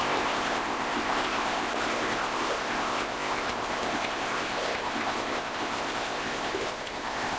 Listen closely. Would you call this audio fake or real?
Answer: fake